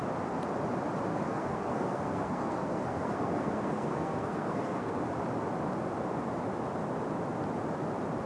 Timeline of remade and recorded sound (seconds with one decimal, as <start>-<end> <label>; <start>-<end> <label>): 0.0-1.1 recorded; 1.1-5.0 remade; 5.0-8.3 recorded